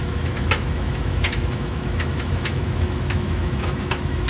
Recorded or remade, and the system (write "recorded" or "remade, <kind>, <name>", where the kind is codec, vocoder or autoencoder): remade, autoencoder, DAC-VAE